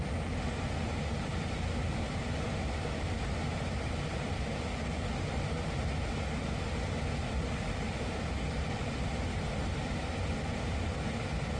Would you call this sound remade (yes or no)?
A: no